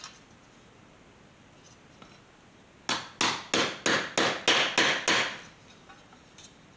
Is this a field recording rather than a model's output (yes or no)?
yes